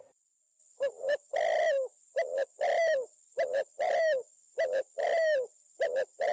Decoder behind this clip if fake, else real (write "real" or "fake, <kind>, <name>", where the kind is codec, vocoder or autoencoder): real